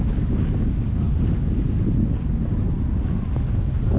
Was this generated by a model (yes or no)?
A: no